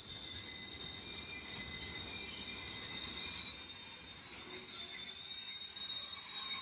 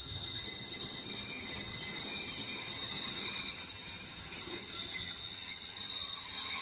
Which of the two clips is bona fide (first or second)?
first